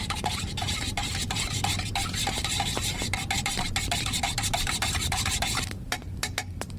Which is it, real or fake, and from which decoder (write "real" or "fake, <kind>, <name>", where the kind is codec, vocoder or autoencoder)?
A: fake, vocoder, BigVGAN v2